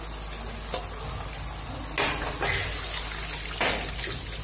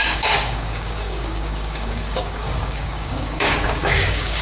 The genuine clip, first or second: first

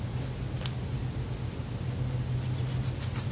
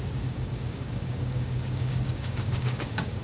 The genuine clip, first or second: first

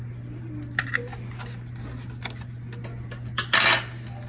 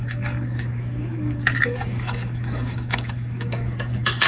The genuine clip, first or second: first